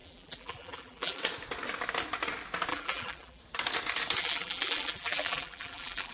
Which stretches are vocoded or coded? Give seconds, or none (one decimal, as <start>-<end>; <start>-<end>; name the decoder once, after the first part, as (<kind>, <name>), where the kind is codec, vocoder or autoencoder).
0.0-1.2 (vocoder, BigVGAN v2); 2.7-3.4; 4.2-6.1